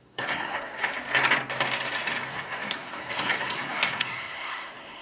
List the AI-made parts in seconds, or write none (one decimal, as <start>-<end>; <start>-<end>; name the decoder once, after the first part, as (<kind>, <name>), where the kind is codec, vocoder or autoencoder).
0.0-0.9 (codec, SNAC); 2.3-5.0